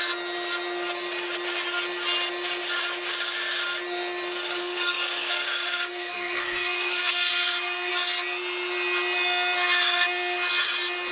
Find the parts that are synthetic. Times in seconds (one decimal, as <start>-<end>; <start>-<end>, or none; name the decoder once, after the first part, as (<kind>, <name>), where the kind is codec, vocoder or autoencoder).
4.6-7.9 (codec, SNAC)

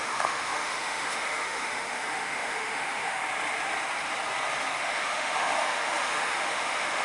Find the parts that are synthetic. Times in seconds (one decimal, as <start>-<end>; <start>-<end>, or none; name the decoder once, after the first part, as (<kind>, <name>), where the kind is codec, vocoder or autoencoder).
0.0-3.2 (autoencoder, DAC-VAE); 4.8-7.0